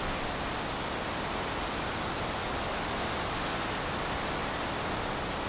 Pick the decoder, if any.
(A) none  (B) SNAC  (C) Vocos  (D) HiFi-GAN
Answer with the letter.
A